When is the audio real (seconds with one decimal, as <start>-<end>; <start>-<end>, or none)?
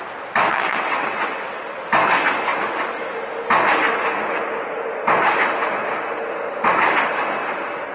0.0-0.5; 1.6-7.9